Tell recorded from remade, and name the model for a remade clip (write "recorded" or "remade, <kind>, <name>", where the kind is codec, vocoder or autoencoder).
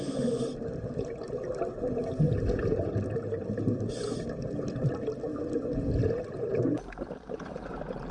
recorded